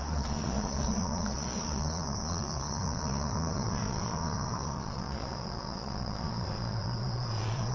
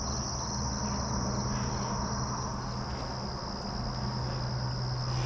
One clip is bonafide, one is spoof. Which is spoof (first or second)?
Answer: first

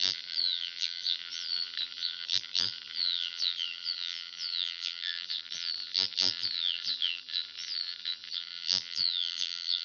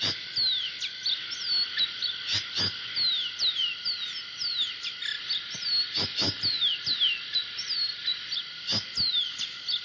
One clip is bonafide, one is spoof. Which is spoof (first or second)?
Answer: first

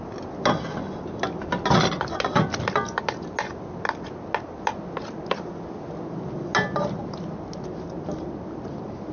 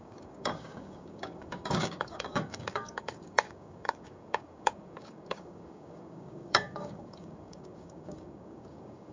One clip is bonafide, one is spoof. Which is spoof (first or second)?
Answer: second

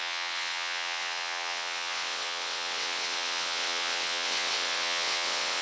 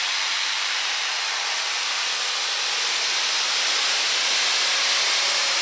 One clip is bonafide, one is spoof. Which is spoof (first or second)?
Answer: first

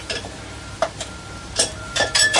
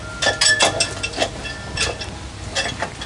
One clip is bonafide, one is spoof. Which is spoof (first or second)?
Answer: first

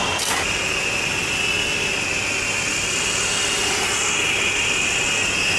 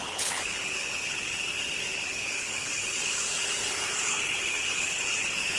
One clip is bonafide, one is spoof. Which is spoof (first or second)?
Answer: second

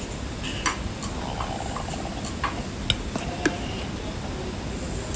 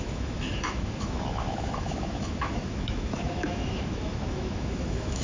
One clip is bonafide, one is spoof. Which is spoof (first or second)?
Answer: second